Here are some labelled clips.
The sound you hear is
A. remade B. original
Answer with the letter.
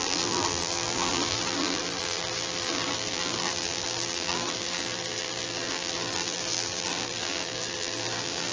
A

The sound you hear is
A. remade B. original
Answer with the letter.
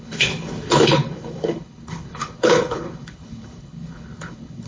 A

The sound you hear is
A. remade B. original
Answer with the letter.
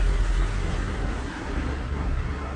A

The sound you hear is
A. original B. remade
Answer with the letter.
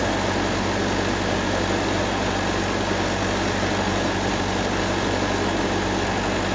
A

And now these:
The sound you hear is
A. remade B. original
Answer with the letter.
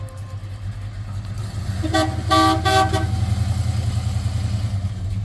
B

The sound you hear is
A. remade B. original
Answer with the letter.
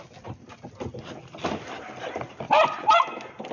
B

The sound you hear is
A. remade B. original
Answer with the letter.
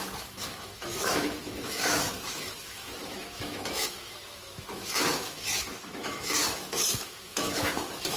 A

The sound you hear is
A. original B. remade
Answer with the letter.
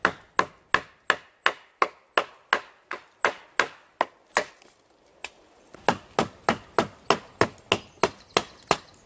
A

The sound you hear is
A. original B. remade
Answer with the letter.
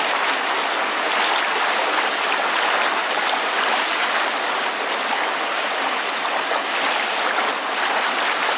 A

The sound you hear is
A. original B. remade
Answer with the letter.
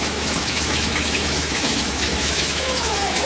B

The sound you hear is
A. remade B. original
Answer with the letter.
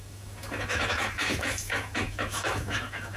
A